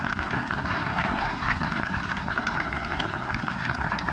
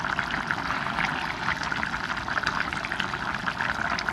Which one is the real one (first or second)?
second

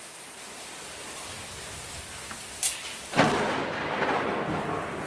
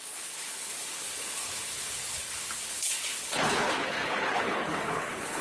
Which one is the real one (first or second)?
first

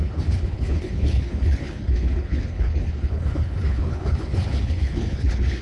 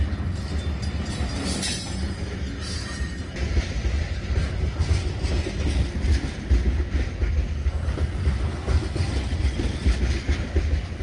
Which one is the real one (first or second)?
second